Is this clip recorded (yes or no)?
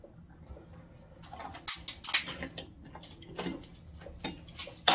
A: yes